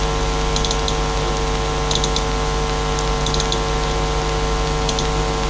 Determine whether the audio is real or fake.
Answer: real